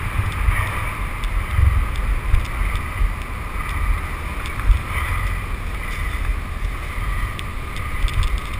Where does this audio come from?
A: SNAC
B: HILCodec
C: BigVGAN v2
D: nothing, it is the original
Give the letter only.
D